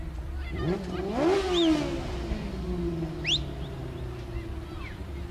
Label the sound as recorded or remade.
recorded